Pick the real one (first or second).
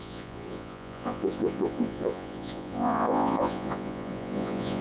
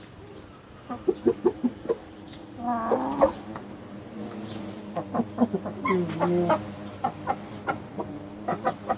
second